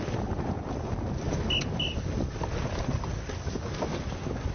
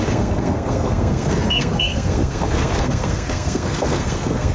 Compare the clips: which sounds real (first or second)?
first